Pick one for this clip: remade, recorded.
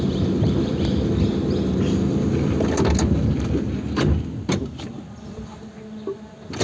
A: recorded